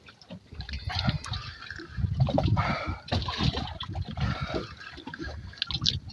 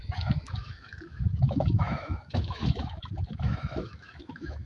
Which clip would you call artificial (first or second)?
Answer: second